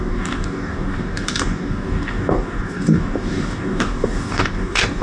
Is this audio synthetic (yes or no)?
yes